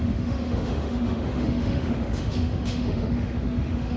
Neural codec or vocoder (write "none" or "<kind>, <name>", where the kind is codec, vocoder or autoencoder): autoencoder, DAC-VAE